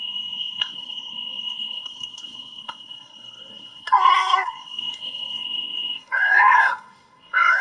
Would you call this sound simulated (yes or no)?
yes